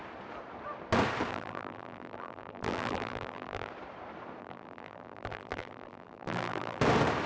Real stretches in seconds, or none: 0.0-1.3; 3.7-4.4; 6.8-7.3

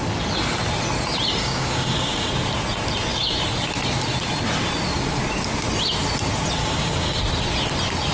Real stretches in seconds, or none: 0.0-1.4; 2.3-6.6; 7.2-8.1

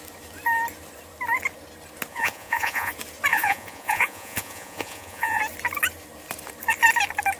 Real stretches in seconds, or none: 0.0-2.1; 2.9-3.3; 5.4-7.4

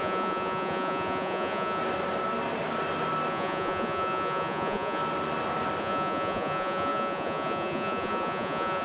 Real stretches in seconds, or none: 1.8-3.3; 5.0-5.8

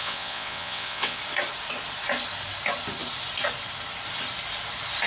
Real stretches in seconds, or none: 1.2-5.1

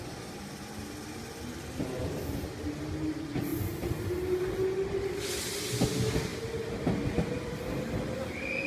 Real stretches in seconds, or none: 0.0-8.7

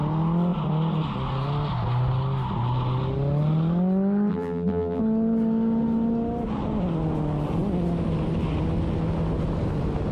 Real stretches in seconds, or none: 0.0-4.3; 5.0-10.1

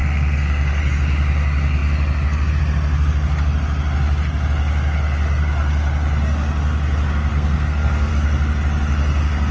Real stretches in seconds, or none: 0.8-7.3; 8.1-9.5